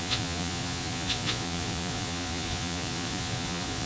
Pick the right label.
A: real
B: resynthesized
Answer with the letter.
B